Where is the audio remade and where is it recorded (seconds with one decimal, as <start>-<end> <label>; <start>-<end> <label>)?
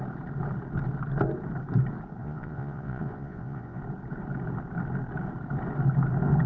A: 0.0-2.2 recorded; 2.2-3.8 remade; 3.8-6.5 recorded